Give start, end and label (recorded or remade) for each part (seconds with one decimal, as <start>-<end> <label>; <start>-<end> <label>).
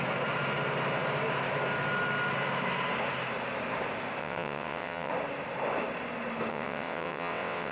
0.0-4.2 recorded; 4.2-5.1 remade; 5.1-6.5 recorded; 6.5-7.7 remade